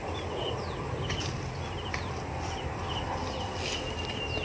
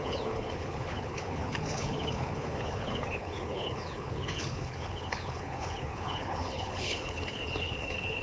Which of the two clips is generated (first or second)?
second